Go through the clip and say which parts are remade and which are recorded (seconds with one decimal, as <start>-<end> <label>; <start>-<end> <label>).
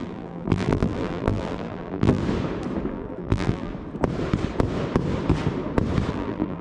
0.0-2.2 remade; 2.2-2.9 recorded; 2.9-3.7 remade; 3.7-6.1 recorded; 6.1-6.6 remade